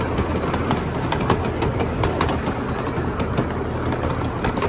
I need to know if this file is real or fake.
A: real